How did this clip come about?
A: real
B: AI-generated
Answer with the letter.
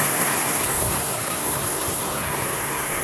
B